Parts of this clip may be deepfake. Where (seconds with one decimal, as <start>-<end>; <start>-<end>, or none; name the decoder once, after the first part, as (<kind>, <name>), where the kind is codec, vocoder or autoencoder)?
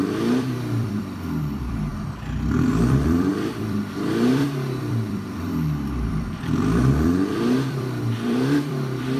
0.0-9.2 (vocoder, BigVGAN v2)